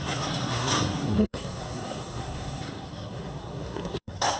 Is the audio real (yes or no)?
no